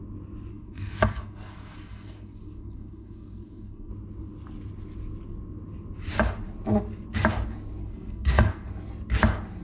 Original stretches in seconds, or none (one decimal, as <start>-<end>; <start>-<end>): 0.0-0.5; 3.9-7.8; 8.7-9.6